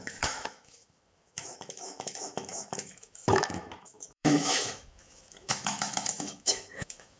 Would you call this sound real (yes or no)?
no